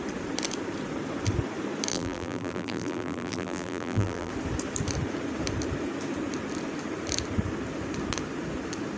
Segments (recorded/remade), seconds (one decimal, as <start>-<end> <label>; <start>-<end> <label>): 0.0-1.9 recorded; 1.9-4.3 remade; 4.3-9.0 recorded